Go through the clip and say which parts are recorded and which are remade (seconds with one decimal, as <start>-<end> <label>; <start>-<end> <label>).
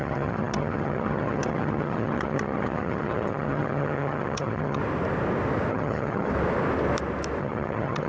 0.0-4.8 remade; 4.8-5.7 recorded; 5.7-6.3 remade; 6.3-7.4 recorded; 7.4-8.1 remade